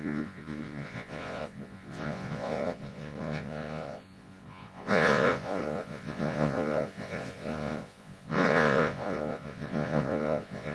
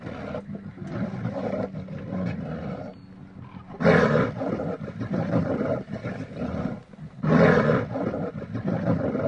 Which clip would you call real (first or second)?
second